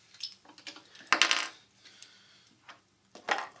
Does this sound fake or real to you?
real